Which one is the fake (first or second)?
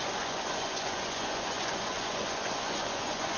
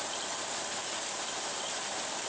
first